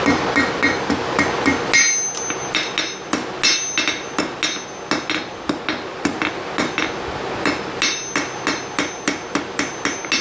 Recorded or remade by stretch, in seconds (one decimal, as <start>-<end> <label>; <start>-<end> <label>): 0.0-10.2 recorded